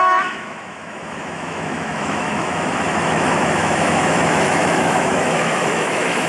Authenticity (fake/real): fake